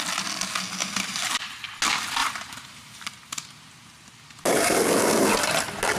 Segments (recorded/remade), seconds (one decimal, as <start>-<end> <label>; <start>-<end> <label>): 0.0-0.8 recorded; 0.8-1.4 remade; 1.4-2.2 recorded; 2.2-4.6 remade; 4.6-6.0 recorded